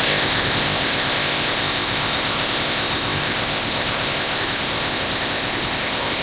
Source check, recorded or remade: remade